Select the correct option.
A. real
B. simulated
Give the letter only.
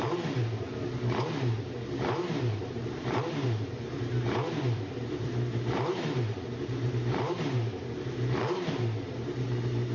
B